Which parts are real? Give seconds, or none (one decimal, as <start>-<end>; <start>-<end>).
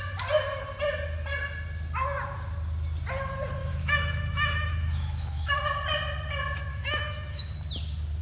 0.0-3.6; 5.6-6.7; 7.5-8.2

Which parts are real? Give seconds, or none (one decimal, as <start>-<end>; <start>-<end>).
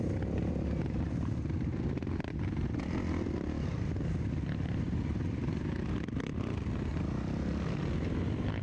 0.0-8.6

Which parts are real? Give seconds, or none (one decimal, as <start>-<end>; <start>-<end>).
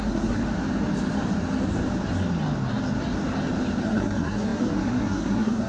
0.4-3.8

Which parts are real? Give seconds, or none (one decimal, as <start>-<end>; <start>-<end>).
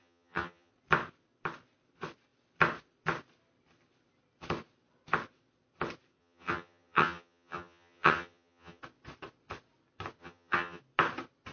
0.7-6.2; 8.8-10.2; 10.8-11.5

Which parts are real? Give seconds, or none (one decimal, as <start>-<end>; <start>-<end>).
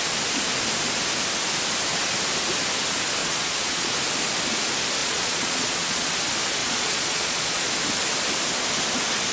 0.0-3.2; 3.9-5.0; 6.1-6.6; 7.7-9.3